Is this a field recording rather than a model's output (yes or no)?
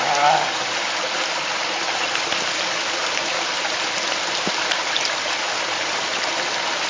yes